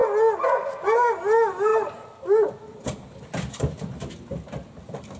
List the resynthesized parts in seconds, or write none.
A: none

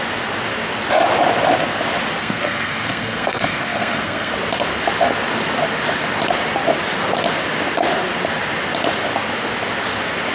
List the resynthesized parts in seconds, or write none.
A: 2.2-4.3 (codec, SNAC)

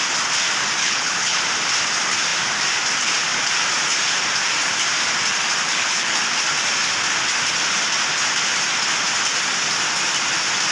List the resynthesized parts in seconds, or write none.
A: 0.8-1.4 (codec, HILCodec); 5.7-6.2

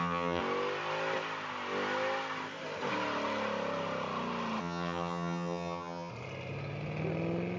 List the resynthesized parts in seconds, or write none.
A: 0.0-0.4 (vocoder, HiFi-GAN); 4.6-6.1